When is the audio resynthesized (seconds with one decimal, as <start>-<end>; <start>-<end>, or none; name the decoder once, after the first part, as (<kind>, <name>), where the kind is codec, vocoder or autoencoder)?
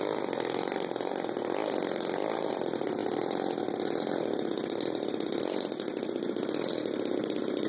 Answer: none